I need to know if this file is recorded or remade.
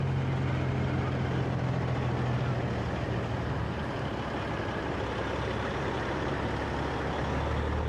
recorded